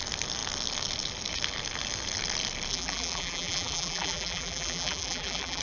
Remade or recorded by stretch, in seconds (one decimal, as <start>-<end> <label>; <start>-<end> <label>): 0.0-2.7 recorded; 2.7-5.6 remade